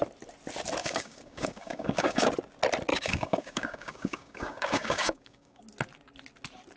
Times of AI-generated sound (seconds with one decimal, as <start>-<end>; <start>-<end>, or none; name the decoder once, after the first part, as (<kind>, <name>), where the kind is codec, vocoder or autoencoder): 0.8-2.3 (codec, DAC); 2.9-5.6